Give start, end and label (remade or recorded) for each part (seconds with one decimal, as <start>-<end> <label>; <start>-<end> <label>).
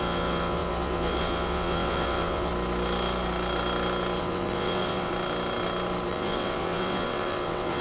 0.0-2.5 remade; 2.5-4.2 recorded; 4.2-5.1 remade; 5.1-6.1 recorded; 6.1-7.8 remade